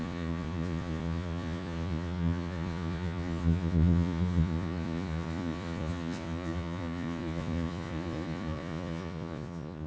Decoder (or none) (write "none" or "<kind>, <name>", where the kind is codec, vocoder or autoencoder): vocoder, Vocos